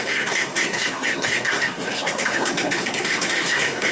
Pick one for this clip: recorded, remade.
remade